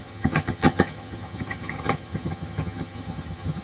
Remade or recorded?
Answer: remade